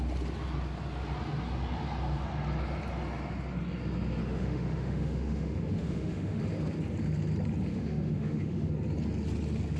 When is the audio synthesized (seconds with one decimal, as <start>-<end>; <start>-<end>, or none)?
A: 4.2-6.4; 7.7-8.7